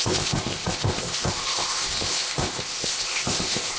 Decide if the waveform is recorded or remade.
remade